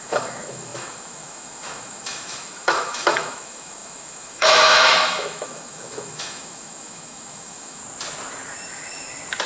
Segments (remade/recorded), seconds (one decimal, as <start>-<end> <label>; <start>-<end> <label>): 0.0-7.8 remade; 7.8-9.5 recorded